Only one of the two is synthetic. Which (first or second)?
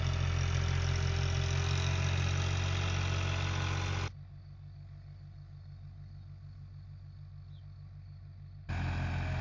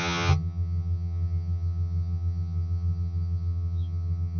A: second